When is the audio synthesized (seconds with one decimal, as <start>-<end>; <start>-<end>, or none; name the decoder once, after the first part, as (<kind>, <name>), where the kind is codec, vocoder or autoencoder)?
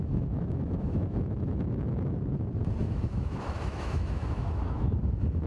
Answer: 0.0-2.2 (autoencoder, DAC-VAE); 2.8-5.0